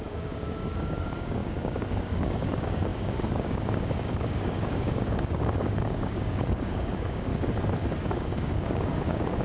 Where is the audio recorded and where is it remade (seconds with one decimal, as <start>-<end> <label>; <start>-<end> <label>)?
0.0-7.3 remade; 7.3-8.0 recorded; 8.0-9.4 remade